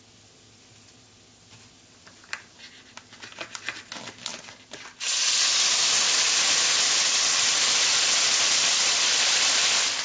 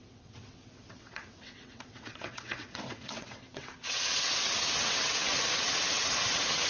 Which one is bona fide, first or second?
first